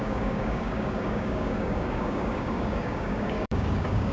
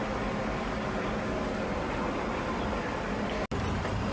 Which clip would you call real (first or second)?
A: second